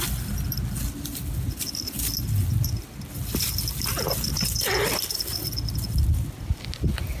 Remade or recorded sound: recorded